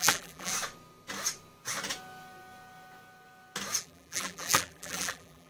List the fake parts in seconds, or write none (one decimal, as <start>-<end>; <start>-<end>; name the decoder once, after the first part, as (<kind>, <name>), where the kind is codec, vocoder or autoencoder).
0.0-0.5 (vocoder, BigVGAN v2); 3.8-5.5